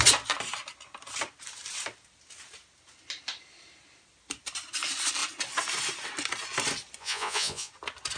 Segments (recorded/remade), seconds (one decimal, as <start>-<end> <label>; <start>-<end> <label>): 0.0-7.0 recorded; 7.0-7.7 remade; 7.7-8.2 recorded